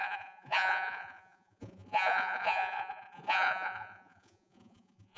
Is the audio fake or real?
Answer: fake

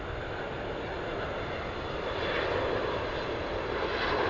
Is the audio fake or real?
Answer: real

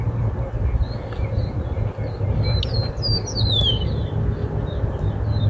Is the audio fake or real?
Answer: real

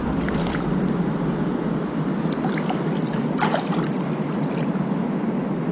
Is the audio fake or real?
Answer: real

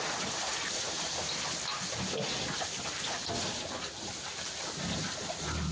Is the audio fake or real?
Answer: real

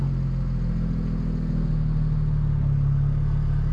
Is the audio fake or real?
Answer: real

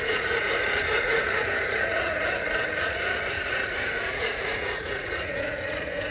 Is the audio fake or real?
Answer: fake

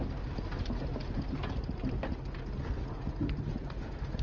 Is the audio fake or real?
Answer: real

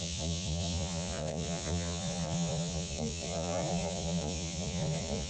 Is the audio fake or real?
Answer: fake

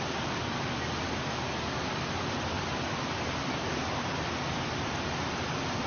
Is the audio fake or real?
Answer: real